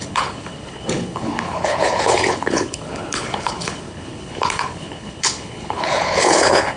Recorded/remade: remade